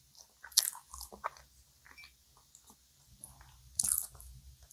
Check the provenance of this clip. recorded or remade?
recorded